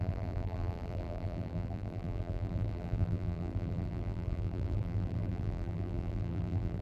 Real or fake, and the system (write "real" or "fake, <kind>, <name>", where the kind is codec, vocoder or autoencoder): fake, vocoder, BigVGAN v2